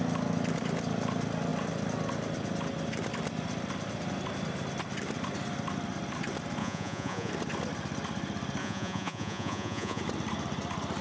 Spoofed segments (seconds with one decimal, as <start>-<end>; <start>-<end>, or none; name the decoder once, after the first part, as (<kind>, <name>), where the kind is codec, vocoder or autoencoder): 6.6-7.3 (vocoder, Vocos); 8.6-10.0